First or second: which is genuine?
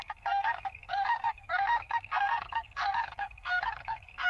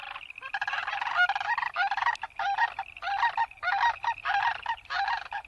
second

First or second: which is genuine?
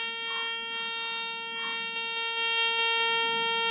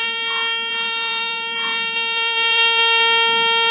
first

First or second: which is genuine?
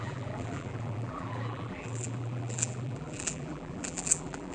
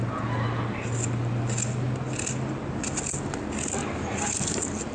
second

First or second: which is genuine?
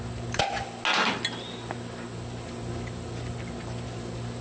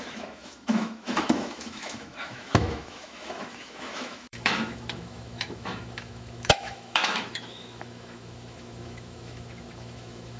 first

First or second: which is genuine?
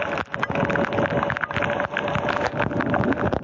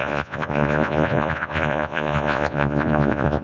first